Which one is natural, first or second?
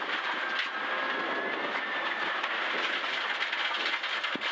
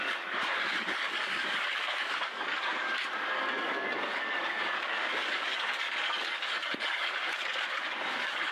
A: first